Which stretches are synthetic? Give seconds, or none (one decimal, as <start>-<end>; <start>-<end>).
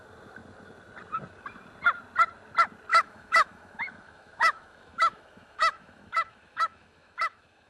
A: 2.9-7.7